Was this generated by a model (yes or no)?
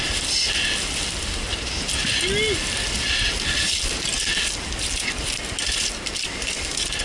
no